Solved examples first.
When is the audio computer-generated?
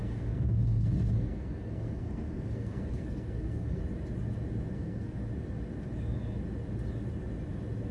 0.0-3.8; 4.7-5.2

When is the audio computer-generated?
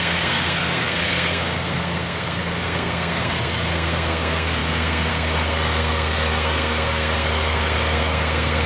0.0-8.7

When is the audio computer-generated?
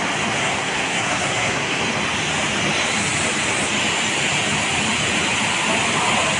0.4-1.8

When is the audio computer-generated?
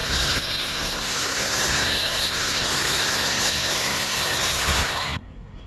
0.0-5.7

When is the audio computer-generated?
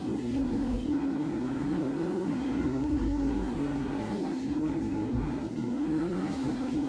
0.0-6.9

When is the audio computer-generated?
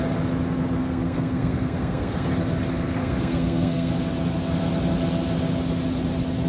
0.8-2.3; 3.0-3.9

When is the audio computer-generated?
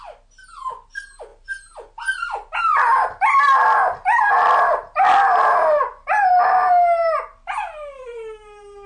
none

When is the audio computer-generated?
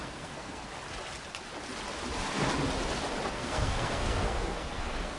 0.0-0.7; 3.3-5.2